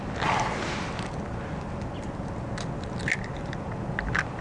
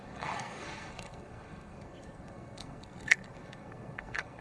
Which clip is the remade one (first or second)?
second